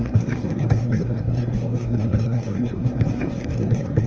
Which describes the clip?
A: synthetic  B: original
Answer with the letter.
A